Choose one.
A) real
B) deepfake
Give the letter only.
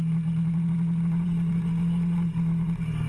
A